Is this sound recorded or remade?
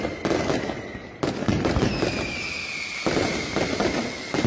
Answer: recorded